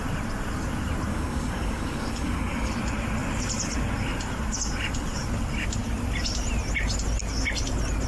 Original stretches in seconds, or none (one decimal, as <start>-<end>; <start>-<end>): 0.0-1.1; 2.7-8.1